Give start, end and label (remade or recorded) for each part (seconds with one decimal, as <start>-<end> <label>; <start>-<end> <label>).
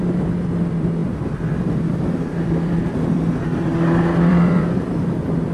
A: 0.0-1.0 remade; 1.0-1.5 recorded; 1.5-3.7 remade; 3.7-4.3 recorded; 4.3-5.5 remade